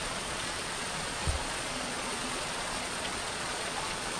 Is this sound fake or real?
fake